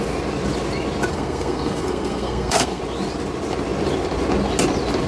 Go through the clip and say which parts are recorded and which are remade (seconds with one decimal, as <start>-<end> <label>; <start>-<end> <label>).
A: 0.0-1.1 recorded; 1.1-2.8 remade; 2.8-5.1 recorded